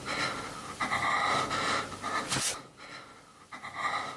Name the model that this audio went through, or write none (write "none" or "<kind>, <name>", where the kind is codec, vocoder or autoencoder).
none